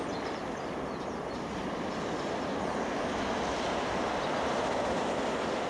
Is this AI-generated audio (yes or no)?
no